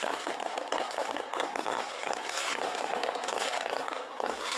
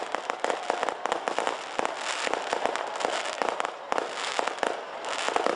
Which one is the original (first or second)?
second